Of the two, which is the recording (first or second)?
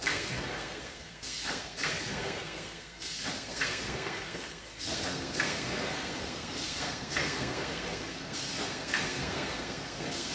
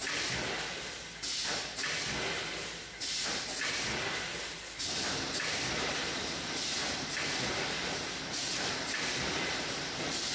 second